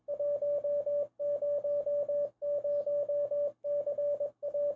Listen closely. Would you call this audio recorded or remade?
recorded